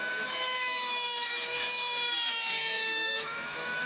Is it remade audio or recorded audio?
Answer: remade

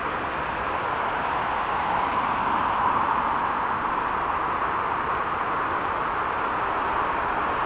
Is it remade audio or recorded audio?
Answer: recorded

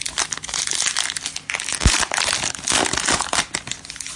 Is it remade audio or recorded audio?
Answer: recorded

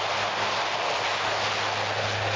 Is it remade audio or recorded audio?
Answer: recorded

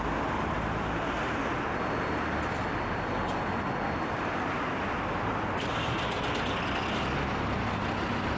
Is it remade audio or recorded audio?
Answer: recorded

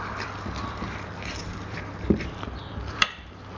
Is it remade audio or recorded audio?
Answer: remade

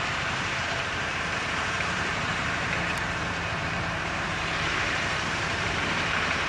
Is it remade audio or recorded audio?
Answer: remade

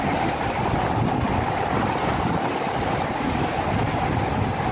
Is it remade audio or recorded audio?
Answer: recorded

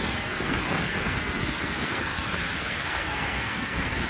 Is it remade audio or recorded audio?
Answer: remade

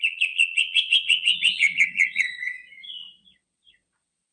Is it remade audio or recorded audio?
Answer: remade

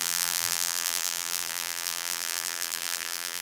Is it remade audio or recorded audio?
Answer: remade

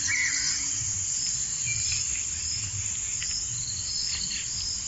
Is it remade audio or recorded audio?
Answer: remade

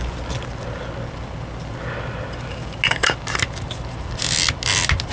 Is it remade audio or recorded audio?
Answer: recorded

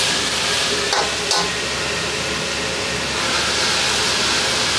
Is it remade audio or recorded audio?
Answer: recorded